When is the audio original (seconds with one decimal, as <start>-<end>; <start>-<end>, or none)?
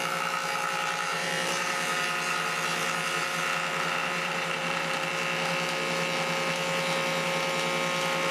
0.0-1.1; 2.0-4.0; 5.1-8.3